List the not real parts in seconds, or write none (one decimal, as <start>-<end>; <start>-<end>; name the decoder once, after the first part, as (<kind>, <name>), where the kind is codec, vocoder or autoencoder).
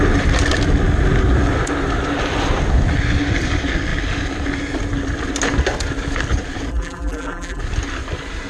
6.7-7.6 (vocoder, BigVGAN v2)